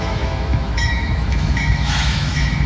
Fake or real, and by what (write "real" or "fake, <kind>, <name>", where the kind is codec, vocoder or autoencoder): fake, autoencoder, DAC-VAE